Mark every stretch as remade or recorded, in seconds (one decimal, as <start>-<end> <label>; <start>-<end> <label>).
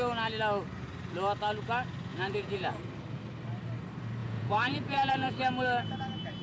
0.0-2.1 recorded; 2.1-2.8 remade; 2.8-4.2 recorded; 4.2-5.4 remade; 5.4-6.4 recorded